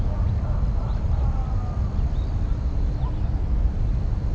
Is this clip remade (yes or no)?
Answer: no